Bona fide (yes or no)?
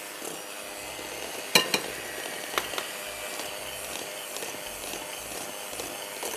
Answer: yes